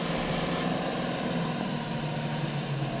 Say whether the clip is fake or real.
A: real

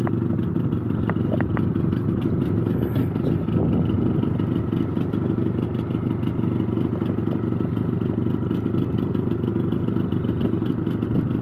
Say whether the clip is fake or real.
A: real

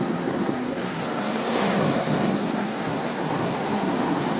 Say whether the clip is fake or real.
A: fake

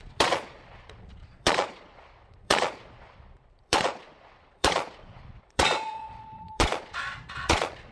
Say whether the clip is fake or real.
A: fake